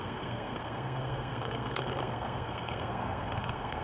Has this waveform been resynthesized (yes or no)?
yes